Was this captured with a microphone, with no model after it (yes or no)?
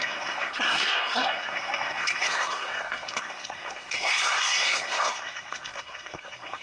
no